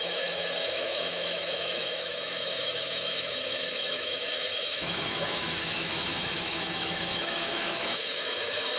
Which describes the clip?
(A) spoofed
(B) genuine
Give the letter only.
A